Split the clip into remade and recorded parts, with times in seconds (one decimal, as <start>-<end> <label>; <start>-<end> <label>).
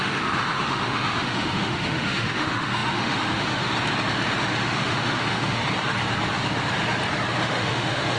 0.0-3.7 remade; 3.7-4.6 recorded; 4.6-5.6 remade; 5.6-7.4 recorded; 7.4-8.2 remade